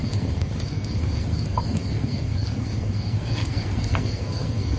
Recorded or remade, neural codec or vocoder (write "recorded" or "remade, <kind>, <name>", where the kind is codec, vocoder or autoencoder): remade, codec, SNAC